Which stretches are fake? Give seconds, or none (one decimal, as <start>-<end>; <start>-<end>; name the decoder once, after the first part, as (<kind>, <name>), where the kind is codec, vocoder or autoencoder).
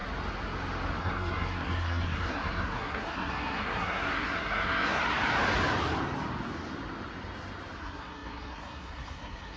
1.0-5.0 (codec, SNAC); 7.8-9.6